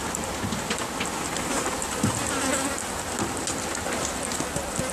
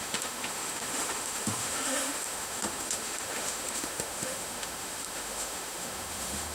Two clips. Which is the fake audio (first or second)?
second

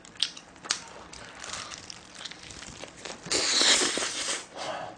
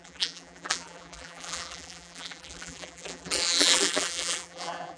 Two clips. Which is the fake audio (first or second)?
second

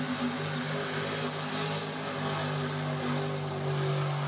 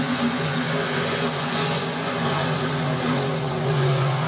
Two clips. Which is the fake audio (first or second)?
second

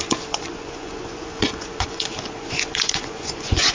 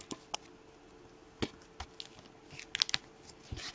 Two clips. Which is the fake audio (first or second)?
first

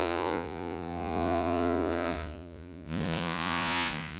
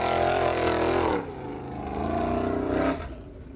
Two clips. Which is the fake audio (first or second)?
first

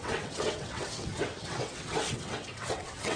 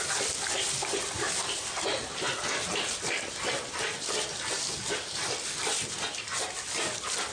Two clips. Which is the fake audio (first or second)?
first